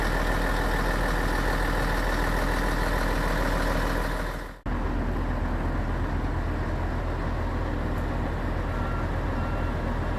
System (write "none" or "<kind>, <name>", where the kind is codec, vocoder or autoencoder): none